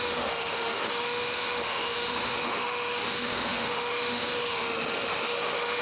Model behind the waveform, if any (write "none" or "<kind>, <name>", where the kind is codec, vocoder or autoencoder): autoencoder, DAC-VAE